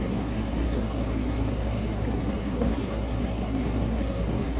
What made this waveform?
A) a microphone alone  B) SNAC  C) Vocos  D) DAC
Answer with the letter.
B